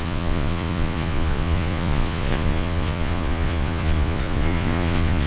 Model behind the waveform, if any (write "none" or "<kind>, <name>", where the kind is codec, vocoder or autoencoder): vocoder, Vocos